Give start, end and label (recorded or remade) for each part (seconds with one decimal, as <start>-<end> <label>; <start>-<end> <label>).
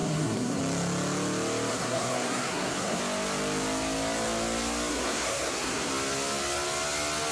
0.0-0.6 remade; 0.6-1.7 recorded; 1.7-3.0 remade; 3.0-4.9 recorded; 4.9-5.9 remade; 5.9-7.3 recorded